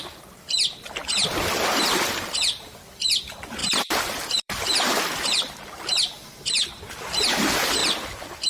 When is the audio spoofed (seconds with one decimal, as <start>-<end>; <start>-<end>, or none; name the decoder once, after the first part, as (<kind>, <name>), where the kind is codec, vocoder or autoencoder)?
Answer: 3.6-5.5 (vocoder, BigVGAN v2)